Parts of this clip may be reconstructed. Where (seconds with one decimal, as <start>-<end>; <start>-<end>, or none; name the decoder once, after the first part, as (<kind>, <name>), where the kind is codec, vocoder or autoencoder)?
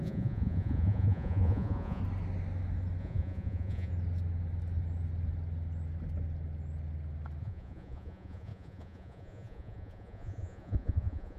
0.0-2.0 (vocoder, Vocos); 3.0-3.9; 7.4-11.4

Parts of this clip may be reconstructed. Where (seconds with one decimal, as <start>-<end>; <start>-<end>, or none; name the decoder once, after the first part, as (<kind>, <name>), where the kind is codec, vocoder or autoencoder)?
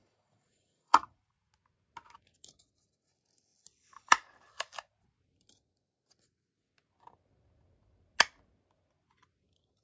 0.0-1.5 (vocoder, Vocos)